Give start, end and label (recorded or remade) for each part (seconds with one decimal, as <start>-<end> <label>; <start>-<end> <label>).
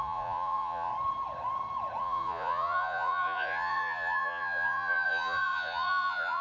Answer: 0.0-0.9 remade; 0.9-2.0 recorded; 2.0-6.4 remade